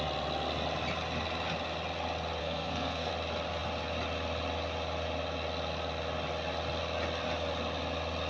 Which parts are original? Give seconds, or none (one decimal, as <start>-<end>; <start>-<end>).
0.0-2.4; 3.1-8.3